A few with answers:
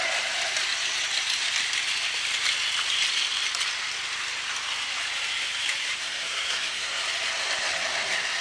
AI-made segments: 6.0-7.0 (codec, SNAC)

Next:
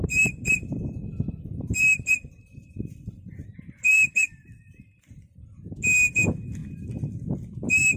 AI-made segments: 0.0-8.0 (vocoder, BigVGAN v2)

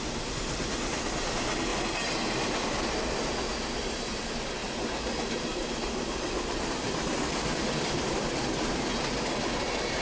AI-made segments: 0.0-1.7 (vocoder, BigVGAN v2); 4.0-8.9; 9.6-10.0

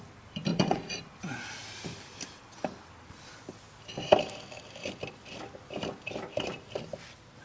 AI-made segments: 0.5-1.0 (vocoder, Vocos)

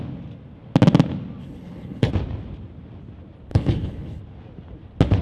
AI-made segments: 1.4-2.1 (codec, HILCodec); 3.5-4.2

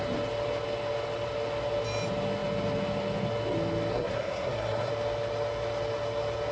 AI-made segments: 3.9-4.9 (codec, SNAC)

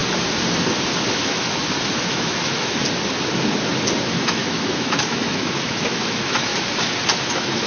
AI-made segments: 1.1-1.6 (autoencoder, DAC-VAE); 2.1-2.8; 4.1-6.5; 7.3-7.7